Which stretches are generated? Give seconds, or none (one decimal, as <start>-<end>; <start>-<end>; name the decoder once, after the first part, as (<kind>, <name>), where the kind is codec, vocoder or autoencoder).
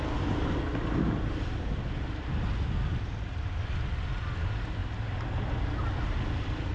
none